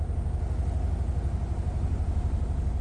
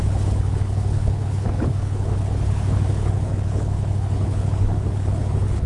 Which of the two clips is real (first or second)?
first